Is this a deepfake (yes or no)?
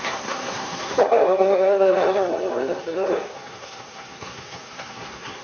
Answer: yes